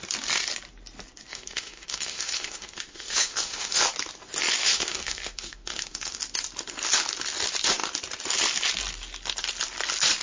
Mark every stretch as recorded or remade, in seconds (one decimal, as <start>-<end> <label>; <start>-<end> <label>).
0.0-1.3 recorded; 1.3-3.8 remade; 3.8-4.6 recorded; 4.6-6.2 remade; 6.2-10.2 recorded